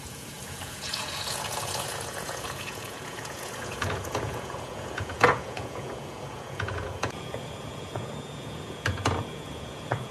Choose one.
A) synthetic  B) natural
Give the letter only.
A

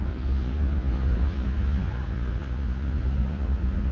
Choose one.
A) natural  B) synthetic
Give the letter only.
B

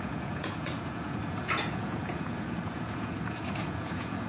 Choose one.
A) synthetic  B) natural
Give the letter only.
A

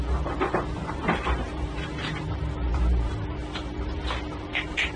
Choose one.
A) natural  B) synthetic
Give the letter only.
B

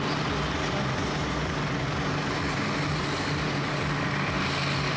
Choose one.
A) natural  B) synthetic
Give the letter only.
A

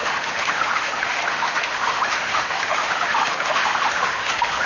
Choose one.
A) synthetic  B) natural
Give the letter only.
A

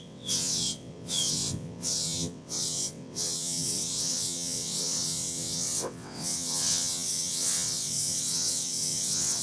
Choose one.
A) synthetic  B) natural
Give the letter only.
A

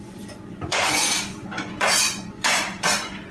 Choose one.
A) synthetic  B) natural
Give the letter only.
A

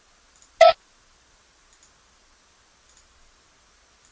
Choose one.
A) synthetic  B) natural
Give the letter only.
B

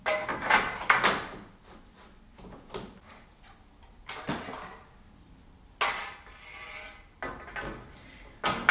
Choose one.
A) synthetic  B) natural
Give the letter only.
B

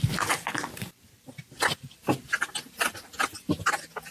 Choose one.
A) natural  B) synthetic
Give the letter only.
B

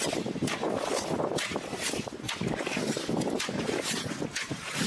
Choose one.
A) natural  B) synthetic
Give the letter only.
A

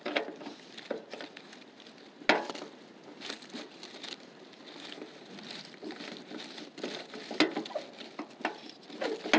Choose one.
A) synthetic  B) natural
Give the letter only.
B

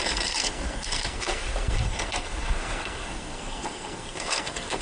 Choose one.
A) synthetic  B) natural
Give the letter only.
A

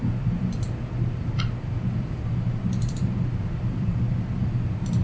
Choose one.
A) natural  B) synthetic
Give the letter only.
B